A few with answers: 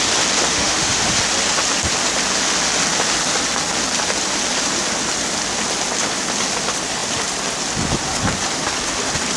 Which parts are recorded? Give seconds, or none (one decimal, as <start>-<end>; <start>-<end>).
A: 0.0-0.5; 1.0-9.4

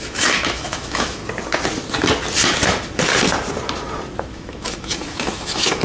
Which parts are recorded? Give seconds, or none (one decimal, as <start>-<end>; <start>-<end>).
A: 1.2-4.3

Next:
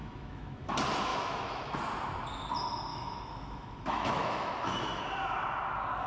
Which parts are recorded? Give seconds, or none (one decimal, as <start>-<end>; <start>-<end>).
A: 0.7-1.1; 1.8-2.9; 5.0-6.1

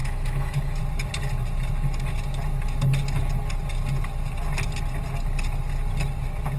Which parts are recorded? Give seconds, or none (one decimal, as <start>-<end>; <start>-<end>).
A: 0.8-6.6